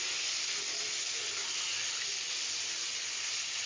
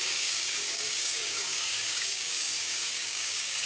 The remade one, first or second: second